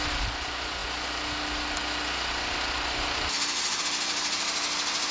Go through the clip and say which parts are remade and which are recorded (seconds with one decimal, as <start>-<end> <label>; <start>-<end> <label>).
0.0-5.1 recorded